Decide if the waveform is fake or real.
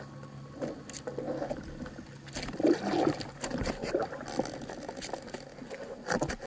real